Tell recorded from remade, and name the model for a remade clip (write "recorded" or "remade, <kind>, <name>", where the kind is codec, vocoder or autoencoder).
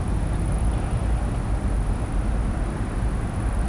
recorded